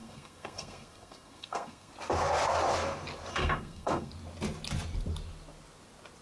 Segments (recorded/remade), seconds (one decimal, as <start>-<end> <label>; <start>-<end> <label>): 0.0-1.9 remade; 1.9-3.3 recorded; 3.3-4.1 remade; 4.1-6.2 recorded